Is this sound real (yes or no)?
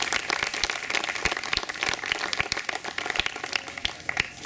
yes